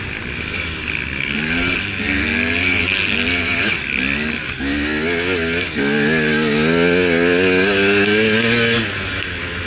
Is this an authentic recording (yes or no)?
yes